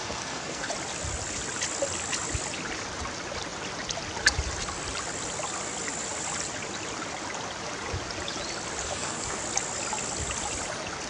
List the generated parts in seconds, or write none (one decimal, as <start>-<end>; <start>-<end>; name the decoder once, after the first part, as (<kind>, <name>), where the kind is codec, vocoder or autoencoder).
0.0-0.7 (codec, SNAC); 8.8-9.4